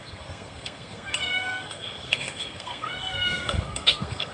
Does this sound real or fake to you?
fake